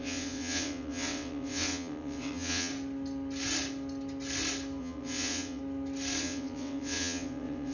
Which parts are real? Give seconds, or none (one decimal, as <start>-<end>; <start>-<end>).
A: 2.7-4.8; 5.6-6.2